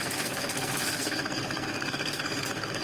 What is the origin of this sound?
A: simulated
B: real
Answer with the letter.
A